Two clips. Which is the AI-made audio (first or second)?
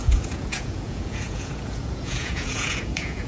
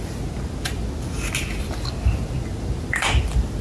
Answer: first